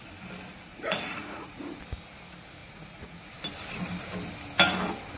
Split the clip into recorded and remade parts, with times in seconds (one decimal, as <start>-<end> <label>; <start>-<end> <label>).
0.0-0.7 recorded; 0.7-1.8 remade; 1.8-2.6 recorded; 2.6-3.3 remade; 3.3-5.2 recorded